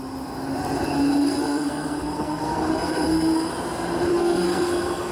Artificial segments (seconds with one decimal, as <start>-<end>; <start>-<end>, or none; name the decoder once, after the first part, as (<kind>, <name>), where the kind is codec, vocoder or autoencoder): 1.2-3.5 (codec, SNAC); 4.1-5.1